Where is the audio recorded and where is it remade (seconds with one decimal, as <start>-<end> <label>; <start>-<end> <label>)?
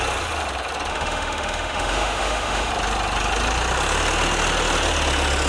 0.0-0.9 recorded; 0.9-2.7 remade; 2.7-5.5 recorded